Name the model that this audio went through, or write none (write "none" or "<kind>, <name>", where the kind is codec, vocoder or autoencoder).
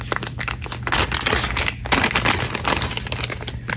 none